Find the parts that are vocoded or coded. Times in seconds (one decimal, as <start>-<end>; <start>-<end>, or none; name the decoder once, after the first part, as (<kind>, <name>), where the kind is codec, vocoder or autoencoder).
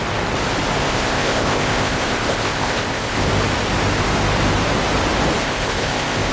0.8-3.3 (codec, ZipCodec); 5.4-6.3